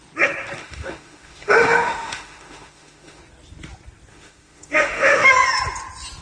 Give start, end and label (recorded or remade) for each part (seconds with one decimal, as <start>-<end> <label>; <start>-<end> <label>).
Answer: 0.0-0.6 recorded; 0.6-3.2 remade; 3.2-4.1 recorded; 4.1-5.3 remade; 5.3-6.2 recorded